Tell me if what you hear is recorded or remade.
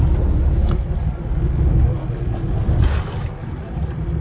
recorded